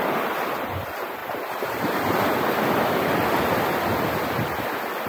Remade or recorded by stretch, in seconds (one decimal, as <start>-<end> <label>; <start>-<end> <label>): 0.0-5.1 recorded